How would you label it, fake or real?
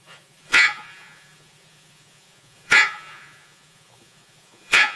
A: fake